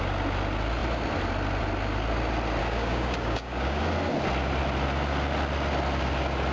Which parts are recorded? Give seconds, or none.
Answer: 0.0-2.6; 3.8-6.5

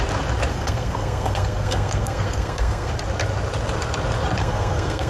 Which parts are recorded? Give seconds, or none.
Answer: 0.0-0.5; 2.9-4.4

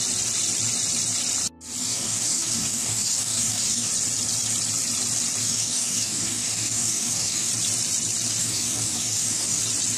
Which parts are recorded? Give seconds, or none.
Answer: 0.0-1.8; 3.9-5.4; 7.5-8.4; 9.6-10.0

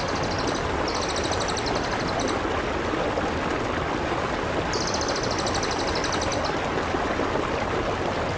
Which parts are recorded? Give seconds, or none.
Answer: 0.0-8.4

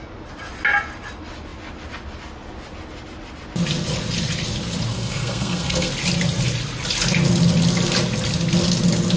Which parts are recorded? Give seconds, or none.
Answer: 0.0-4.9; 5.9-9.2

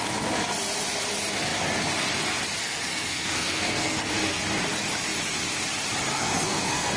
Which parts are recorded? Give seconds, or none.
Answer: 0.0-2.6; 4.4-6.1

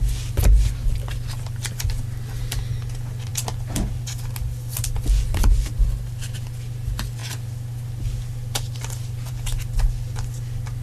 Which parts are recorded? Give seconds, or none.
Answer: 0.0-10.8

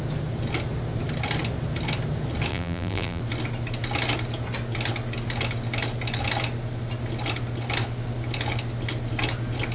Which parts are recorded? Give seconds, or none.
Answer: 0.0-2.5; 3.2-9.7